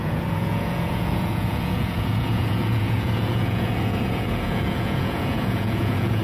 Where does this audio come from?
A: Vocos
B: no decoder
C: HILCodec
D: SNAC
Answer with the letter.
A